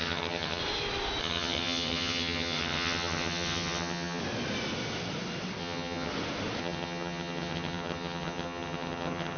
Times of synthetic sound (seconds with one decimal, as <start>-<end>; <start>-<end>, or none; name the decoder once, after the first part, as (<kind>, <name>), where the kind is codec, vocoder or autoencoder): 0.0-0.6 (vocoder, HiFi-GAN); 1.2-4.2; 5.6-6.1; 6.6-9.4